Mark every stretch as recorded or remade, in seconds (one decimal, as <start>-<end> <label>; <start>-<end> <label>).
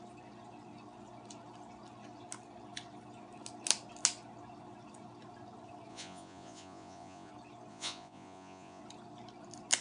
0.0-5.9 recorded; 5.9-7.3 remade; 7.3-7.7 recorded; 7.7-8.8 remade; 8.8-9.8 recorded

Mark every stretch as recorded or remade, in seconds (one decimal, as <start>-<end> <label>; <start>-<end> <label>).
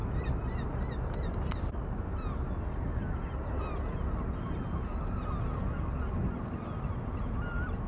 0.0-7.9 recorded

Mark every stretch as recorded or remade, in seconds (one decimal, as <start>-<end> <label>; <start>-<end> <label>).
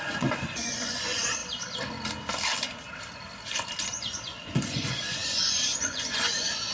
0.0-1.4 remade; 1.4-4.0 recorded; 4.0-6.7 remade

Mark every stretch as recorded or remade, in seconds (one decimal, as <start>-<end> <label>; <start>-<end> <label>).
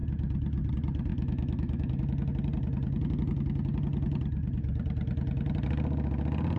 0.0-1.1 recorded; 1.1-2.3 remade; 2.3-6.6 recorded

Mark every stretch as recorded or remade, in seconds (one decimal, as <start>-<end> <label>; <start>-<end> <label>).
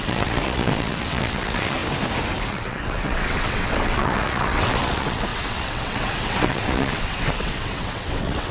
0.0-1.8 remade; 1.8-2.5 recorded; 2.5-8.5 remade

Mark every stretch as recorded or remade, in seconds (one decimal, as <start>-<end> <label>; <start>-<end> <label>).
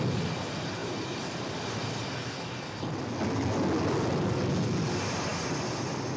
0.0-6.2 recorded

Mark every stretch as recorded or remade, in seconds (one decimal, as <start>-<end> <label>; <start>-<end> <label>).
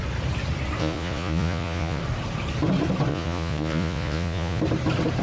0.0-0.8 recorded; 0.8-2.0 remade; 2.0-3.1 recorded; 3.1-4.6 remade; 4.6-5.2 recorded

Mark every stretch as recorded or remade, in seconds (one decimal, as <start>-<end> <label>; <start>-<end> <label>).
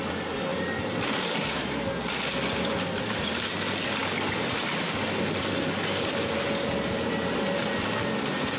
0.0-0.5 recorded; 0.5-1.7 remade; 1.7-8.6 recorded